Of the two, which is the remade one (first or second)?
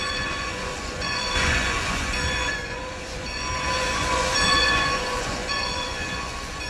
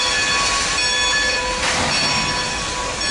first